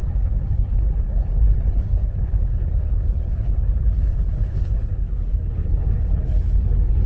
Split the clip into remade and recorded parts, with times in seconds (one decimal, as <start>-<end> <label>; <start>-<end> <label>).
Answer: 0.0-7.1 remade